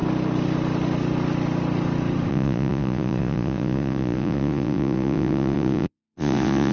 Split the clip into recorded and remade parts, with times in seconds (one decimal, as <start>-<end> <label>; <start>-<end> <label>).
0.0-2.3 recorded; 2.3-6.7 remade